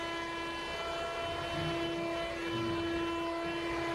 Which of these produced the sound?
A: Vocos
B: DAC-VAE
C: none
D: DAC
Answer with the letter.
C